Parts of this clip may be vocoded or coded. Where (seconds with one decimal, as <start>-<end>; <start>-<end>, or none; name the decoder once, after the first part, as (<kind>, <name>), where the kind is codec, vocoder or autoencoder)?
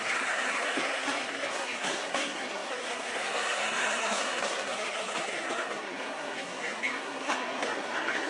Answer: 0.0-8.3 (codec, SNAC)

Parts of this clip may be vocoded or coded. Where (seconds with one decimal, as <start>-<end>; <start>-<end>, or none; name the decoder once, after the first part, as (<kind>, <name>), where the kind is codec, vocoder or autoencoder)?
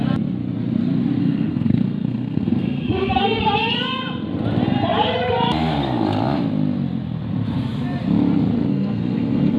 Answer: 1.2-3.4 (codec, SNAC); 8.7-9.6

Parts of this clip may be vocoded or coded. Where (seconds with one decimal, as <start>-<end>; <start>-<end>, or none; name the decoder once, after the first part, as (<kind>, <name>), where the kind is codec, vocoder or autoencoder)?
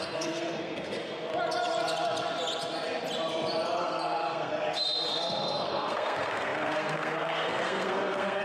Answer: 0.0-1.3 (codec, SNAC); 3.8-4.5; 5.1-8.4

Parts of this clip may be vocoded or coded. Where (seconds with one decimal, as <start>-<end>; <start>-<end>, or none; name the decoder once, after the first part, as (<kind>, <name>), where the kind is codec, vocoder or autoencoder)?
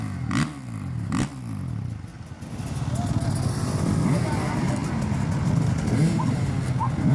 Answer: none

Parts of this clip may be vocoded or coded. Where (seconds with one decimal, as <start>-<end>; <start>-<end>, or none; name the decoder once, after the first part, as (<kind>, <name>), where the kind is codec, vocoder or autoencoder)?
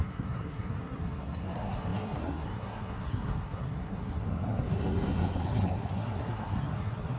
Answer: 0.0-7.2 (codec, SNAC)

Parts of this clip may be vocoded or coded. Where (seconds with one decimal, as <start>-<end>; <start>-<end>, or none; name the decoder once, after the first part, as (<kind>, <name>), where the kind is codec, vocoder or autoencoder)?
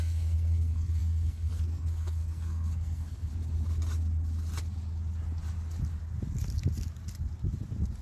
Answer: 0.0-3.3 (codec, SNAC)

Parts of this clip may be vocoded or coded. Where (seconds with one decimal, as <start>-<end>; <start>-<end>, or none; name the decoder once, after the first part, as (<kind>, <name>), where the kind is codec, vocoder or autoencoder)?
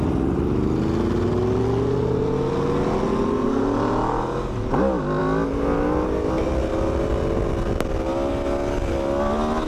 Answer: none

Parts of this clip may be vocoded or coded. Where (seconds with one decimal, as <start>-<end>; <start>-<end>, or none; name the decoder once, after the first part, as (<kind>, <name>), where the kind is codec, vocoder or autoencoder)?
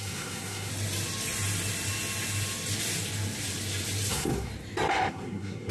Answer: 0.0-0.7 (codec, SNAC); 4.1-4.5; 5.1-5.7